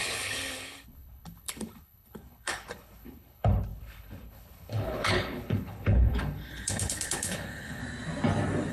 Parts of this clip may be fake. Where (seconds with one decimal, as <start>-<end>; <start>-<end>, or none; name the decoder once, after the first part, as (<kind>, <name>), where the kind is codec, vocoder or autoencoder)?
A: 0.0-7.8 (codec, HILCodec)

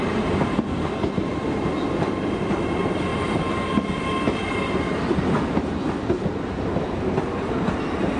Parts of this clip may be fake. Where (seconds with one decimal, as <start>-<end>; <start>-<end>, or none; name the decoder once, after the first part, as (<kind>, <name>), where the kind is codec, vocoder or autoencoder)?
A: none

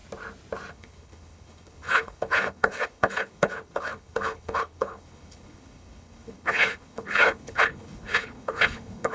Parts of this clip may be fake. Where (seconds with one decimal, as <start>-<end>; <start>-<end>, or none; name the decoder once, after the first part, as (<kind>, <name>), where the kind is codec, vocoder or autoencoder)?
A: 0.7-9.1 (codec, HILCodec)